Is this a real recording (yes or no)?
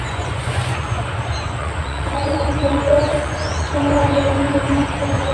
no